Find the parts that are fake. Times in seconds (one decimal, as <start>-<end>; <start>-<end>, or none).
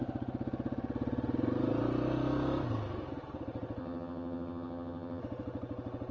3.8-5.2